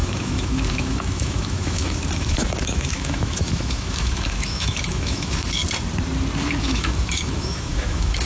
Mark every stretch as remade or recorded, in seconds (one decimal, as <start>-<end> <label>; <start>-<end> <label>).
0.0-5.6 remade; 5.6-6.6 recorded; 6.6-8.3 remade